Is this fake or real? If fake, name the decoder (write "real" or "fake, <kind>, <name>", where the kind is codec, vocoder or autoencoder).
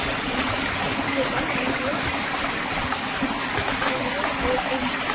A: real